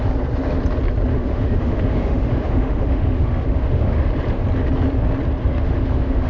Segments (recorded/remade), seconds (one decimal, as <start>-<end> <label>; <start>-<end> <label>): 0.0-1.1 recorded; 1.1-4.1 remade; 4.1-5.5 recorded; 5.5-6.3 remade

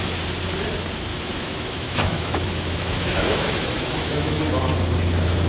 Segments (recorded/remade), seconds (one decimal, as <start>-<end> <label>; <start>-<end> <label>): 0.0-1.1 recorded; 1.1-4.4 remade; 4.4-5.5 recorded

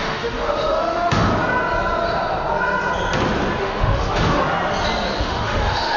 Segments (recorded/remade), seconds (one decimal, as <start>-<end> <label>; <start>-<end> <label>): 0.0-1.3 remade; 1.3-3.6 recorded; 3.6-4.4 remade; 4.4-5.2 recorded; 5.2-6.0 remade

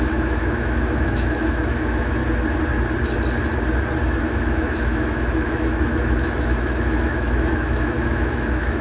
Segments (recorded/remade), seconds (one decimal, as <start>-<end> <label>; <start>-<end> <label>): 0.0-2.2 remade; 2.2-4.2 recorded; 4.2-8.8 remade